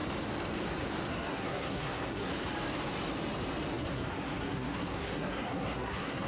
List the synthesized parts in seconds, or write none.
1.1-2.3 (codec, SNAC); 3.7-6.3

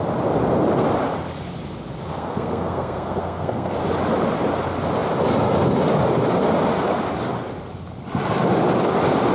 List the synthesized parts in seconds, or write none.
2.1-3.7 (codec, SNAC)

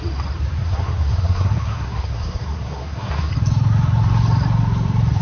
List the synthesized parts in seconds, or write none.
0.6-3.3 (codec, SNAC)

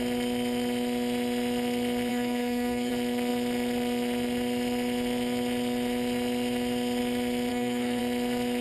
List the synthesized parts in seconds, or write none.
2.1-2.9 (codec, SNAC); 7.5-8.0

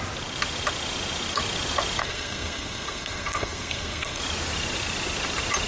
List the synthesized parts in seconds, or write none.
2.0-4.2 (codec, SNAC)

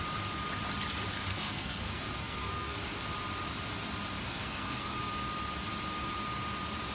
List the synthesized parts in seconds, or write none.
1.3-2.7 (codec, SNAC); 4.3-5.0